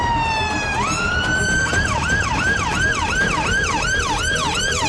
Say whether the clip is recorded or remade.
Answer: remade